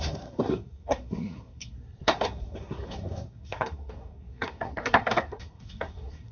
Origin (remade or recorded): remade